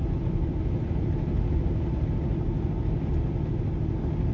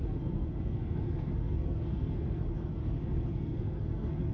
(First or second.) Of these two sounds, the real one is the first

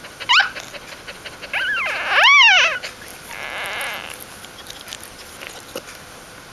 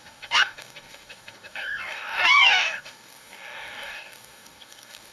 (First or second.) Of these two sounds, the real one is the first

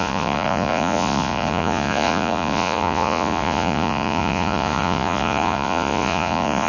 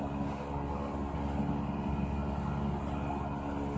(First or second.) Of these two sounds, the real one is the second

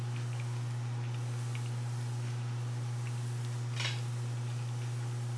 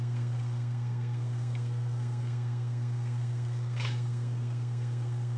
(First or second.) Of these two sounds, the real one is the first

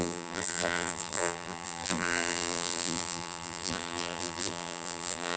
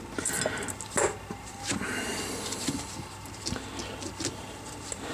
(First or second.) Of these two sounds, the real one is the second